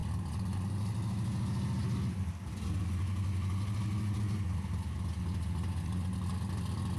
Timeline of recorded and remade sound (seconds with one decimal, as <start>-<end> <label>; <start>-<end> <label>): 0.0-7.0 recorded